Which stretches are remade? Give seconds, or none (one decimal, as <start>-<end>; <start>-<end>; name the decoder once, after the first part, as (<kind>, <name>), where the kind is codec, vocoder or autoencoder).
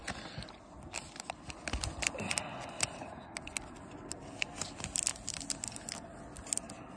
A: none